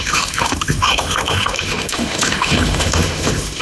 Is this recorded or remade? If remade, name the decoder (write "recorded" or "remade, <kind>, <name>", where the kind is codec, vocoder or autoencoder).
remade, autoencoder, DAC-VAE